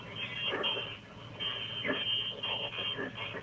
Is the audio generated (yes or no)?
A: no